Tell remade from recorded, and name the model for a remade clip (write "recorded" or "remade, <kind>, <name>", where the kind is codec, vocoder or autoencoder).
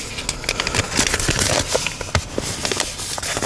recorded